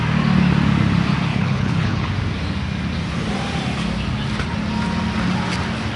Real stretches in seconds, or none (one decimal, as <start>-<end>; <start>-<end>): 0.0-1.3; 2.1-6.0